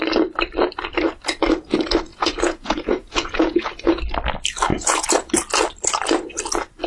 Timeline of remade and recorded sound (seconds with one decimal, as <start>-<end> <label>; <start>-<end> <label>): 0.0-2.1 recorded; 2.1-4.0 remade; 4.0-4.7 recorded; 4.7-5.3 remade; 5.3-6.9 recorded